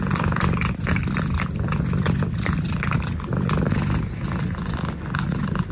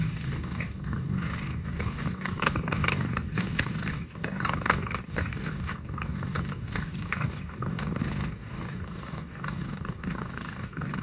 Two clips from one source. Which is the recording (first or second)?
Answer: first